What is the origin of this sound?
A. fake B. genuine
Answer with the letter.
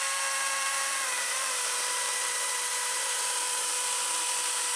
A